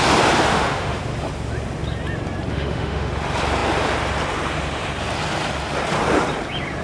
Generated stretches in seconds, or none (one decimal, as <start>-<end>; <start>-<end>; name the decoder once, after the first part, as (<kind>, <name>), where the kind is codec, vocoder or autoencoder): 0.5-1.0 (autoencoder, DAC-VAE); 2.5-3.1